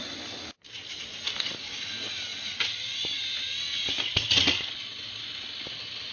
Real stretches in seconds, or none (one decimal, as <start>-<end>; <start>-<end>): 0.0-6.1